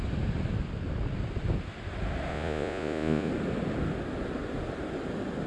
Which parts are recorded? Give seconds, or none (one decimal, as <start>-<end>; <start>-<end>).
0.0-2.3; 3.3-5.5